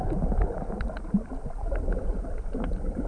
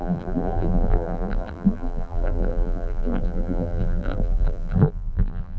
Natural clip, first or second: first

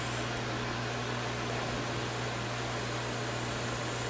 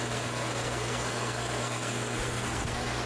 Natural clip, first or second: first